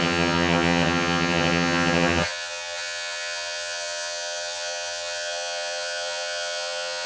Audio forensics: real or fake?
fake